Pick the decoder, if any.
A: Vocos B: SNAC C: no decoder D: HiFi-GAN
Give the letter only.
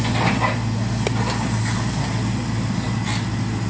C